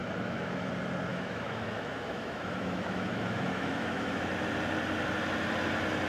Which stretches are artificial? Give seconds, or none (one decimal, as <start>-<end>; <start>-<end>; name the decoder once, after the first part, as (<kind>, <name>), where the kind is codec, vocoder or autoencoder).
0.0-0.7 (autoencoder, DAC-VAE); 1.1-4.2